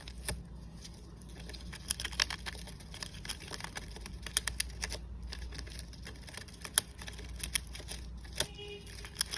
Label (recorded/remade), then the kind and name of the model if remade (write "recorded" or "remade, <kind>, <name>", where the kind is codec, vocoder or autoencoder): recorded